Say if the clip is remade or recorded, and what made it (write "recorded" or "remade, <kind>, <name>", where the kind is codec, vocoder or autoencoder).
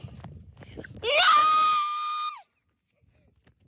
recorded